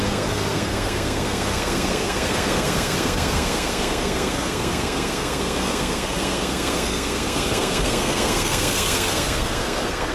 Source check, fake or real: fake